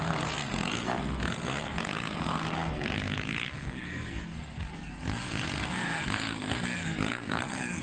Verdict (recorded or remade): remade